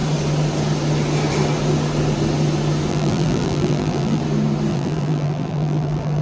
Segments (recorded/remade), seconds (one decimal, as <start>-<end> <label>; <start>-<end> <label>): 0.0-2.9 recorded; 2.9-4.2 remade; 4.2-4.7 recorded; 4.7-6.2 remade